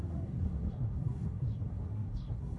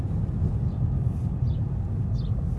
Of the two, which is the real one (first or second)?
second